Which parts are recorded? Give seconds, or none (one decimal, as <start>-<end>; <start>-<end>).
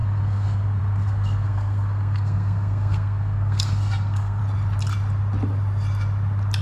4.4-6.6